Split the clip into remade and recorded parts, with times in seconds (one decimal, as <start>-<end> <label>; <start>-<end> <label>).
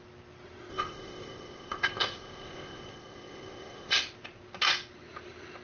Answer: 0.0-0.7 recorded; 0.7-4.0 remade; 4.0-5.6 recorded